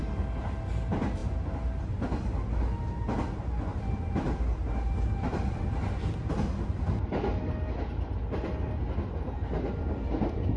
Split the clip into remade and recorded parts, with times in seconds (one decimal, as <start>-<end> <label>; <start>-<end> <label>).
0.0-10.6 recorded